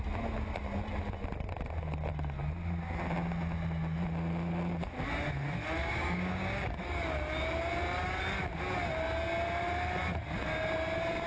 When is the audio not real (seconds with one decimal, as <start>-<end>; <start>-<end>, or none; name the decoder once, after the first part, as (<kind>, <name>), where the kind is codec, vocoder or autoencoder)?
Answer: 5.8-7.0 (codec, DAC)